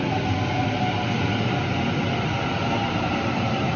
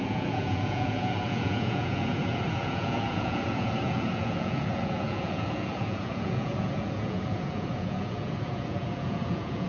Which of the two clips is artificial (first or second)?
second